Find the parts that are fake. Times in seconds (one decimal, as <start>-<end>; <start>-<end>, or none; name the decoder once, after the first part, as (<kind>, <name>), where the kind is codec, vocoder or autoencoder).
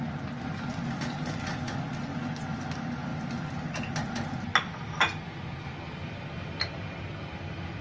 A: none